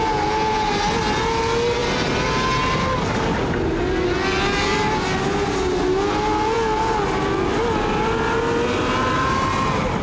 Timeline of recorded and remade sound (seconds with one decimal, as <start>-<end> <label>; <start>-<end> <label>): 0.0-10.0 recorded